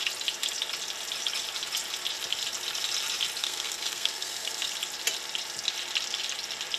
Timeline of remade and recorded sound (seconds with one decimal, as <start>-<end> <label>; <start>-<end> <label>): 0.0-3.4 recorded; 3.4-4.7 remade; 4.7-6.8 recorded